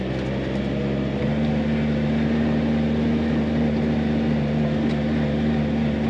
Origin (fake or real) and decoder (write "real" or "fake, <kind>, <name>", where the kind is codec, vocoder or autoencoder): real